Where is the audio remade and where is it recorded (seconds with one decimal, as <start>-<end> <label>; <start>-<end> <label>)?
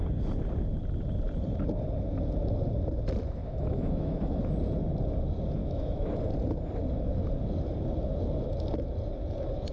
0.0-3.4 recorded; 3.4-4.4 remade; 4.4-5.6 recorded; 5.6-6.1 remade; 6.1-9.7 recorded